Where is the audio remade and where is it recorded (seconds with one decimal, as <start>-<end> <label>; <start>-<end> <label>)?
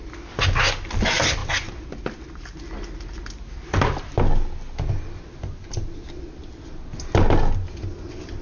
0.0-8.4 recorded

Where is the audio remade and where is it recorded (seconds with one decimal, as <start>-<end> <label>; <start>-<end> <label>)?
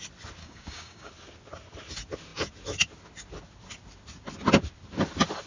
0.0-0.4 recorded; 0.4-1.1 remade; 1.1-5.5 recorded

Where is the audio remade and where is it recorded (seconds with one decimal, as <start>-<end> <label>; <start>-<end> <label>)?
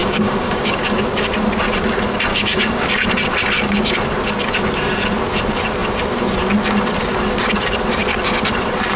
0.0-0.8 remade; 0.8-2.3 recorded; 2.3-2.9 remade; 2.9-9.0 recorded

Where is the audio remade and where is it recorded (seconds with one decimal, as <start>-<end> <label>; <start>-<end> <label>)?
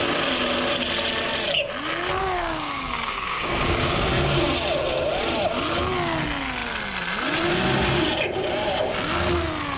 0.0-2.2 recorded; 2.2-4.1 remade; 4.1-9.8 recorded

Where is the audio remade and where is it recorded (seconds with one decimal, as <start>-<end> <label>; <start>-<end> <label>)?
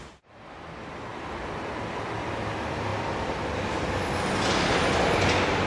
0.0-5.7 recorded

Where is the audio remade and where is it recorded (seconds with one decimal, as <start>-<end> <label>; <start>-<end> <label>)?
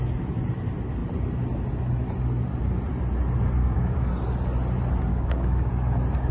0.0-3.6 recorded; 3.6-4.1 remade; 4.1-5.1 recorded; 5.1-5.7 remade; 5.7-6.3 recorded